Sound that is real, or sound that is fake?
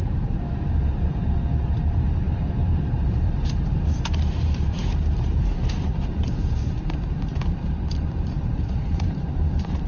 fake